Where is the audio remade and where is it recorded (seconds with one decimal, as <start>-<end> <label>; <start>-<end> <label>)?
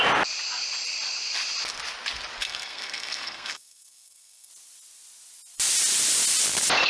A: 0.0-2.4 recorded; 2.4-4.5 remade; 4.5-6.9 recorded